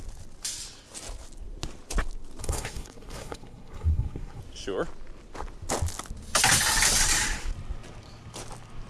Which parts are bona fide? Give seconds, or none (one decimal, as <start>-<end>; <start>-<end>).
0.0-2.4; 4.4-8.9